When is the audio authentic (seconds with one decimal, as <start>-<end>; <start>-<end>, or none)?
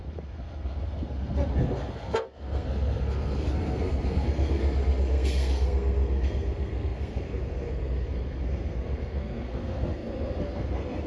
none